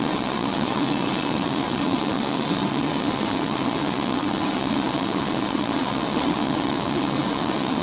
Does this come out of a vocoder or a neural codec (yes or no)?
yes